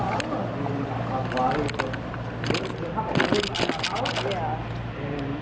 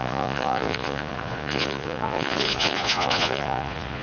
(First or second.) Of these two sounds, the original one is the first